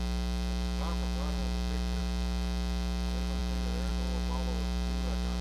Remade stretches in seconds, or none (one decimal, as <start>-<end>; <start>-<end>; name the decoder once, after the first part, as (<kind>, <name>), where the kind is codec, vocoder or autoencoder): none